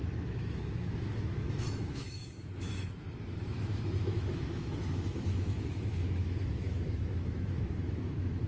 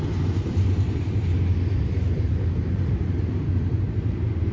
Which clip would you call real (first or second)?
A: second